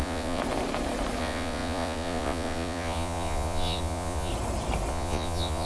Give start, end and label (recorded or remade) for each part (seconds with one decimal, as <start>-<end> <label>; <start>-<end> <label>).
0.0-0.4 remade; 0.4-1.2 recorded; 1.2-4.3 remade; 4.3-4.9 recorded; 4.9-5.7 remade